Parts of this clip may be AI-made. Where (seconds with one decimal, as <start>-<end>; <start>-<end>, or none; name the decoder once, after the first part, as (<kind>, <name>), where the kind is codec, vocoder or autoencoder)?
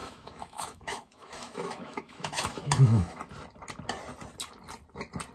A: 0.0-3.2 (autoencoder, DAC-VAE)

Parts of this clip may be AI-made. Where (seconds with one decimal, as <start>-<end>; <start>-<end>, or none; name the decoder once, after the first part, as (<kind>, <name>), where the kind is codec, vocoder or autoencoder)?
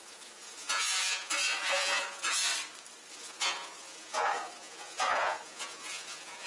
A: 0.0-2.5 (vocoder, Vocos); 3.1-6.5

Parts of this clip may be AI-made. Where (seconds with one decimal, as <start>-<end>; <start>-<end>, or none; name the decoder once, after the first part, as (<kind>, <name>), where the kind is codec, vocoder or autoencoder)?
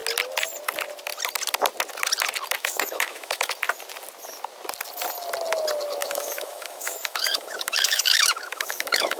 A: 2.6-3.5 (autoencoder, DAC-VAE); 6.0-9.2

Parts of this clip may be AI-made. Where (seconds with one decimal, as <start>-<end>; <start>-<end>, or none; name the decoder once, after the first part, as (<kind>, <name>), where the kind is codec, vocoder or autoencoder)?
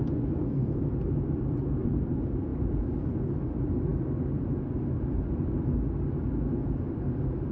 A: 0.4-0.9 (codec, SNAC)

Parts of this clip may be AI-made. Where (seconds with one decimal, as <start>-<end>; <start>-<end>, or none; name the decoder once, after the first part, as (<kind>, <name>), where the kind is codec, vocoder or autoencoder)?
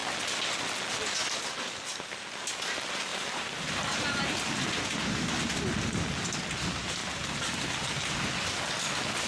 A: 3.1-5.6 (vocoder, BigVGAN v2); 7.0-8.3